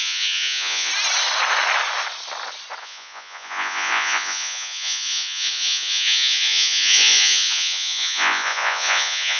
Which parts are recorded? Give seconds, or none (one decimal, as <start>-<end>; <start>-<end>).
0.9-2.8